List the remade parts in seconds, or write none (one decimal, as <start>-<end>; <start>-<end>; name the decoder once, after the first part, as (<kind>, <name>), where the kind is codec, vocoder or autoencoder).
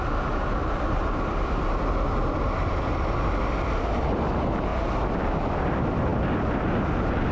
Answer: 0.6-2.1 (vocoder, BigVGAN v2); 4.7-5.2